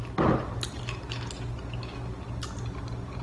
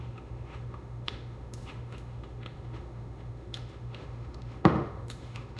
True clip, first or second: first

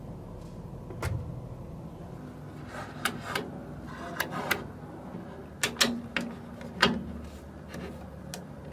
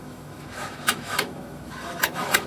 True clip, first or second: first